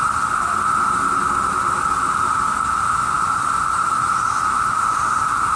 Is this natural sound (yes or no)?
yes